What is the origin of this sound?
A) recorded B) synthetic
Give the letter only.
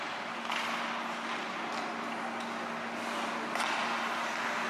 A